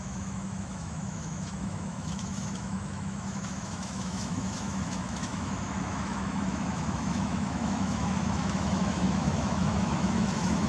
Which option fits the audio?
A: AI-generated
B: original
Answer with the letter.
A